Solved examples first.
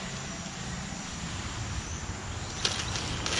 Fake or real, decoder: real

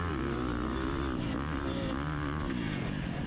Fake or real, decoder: real